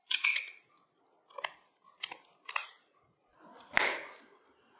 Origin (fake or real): real